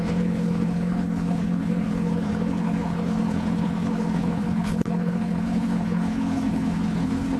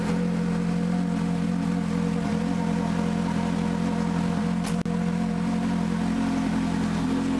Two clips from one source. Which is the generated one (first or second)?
first